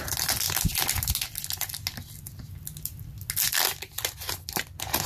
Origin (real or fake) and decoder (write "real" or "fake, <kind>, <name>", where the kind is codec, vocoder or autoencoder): real